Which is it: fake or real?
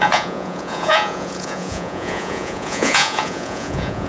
fake